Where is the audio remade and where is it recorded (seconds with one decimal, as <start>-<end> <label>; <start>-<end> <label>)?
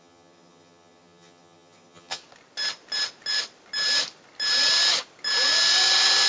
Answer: 0.0-2.2 remade; 2.2-6.3 recorded